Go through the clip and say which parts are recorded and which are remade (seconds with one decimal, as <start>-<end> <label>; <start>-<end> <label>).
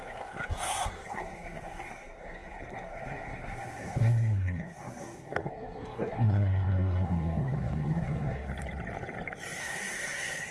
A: 0.0-8.5 remade; 8.5-9.6 recorded; 9.6-10.5 remade